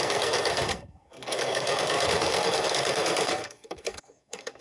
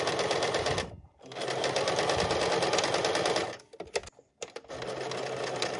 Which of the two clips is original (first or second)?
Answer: second